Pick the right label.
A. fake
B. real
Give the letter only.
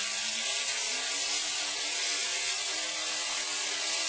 B